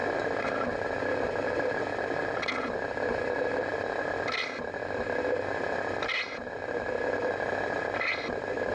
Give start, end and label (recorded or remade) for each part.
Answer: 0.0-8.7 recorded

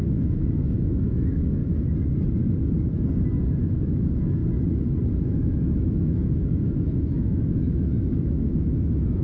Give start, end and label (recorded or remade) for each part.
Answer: 0.0-1.6 remade; 1.6-3.6 recorded; 3.6-4.4 remade; 4.4-5.2 recorded; 5.2-9.2 remade

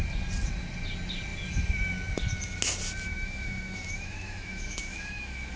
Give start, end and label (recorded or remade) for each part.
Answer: 0.0-3.1 recorded; 3.1-5.6 remade

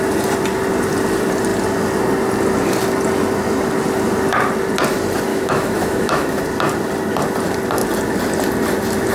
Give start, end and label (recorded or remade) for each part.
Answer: 0.0-5.3 recorded; 5.3-6.4 remade; 6.4-9.1 recorded

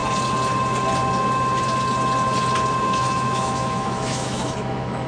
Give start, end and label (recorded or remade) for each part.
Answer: 0.0-2.8 recorded; 2.8-5.1 remade

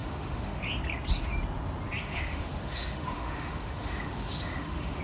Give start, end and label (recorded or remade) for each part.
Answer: 0.0-0.6 remade; 0.6-2.0 recorded; 2.0-5.0 remade

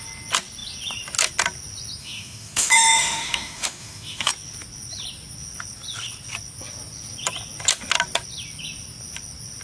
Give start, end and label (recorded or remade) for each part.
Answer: 0.0-2.0 recorded; 2.0-4.3 remade; 4.3-9.6 recorded

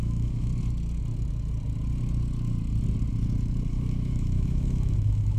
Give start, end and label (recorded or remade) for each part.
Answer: 0.0-0.5 remade; 0.5-3.7 recorded; 3.7-5.4 remade